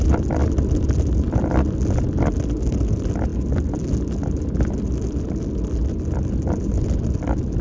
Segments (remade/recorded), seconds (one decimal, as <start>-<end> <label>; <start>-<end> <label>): 0.0-7.6 recorded